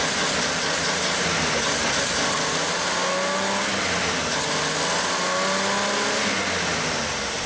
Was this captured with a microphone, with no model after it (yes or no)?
yes